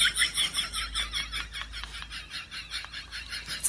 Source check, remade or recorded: recorded